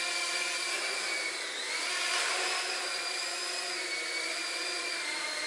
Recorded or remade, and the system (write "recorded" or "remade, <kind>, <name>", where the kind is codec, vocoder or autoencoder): recorded